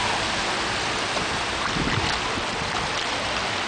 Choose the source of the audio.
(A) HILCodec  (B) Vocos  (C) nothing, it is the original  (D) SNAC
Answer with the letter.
C